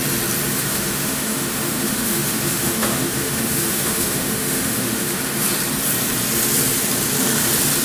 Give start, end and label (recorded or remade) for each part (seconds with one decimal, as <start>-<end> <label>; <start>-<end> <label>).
0.0-0.5 recorded; 0.5-5.2 remade; 5.2-7.8 recorded